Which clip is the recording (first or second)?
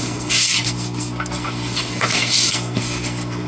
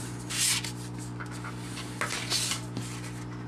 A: second